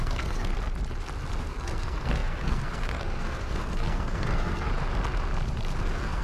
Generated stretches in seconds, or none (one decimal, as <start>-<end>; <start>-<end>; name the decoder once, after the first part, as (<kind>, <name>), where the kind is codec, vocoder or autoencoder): 0.0-0.5 (codec, SNAC); 1.4-4.7; 5.8-6.2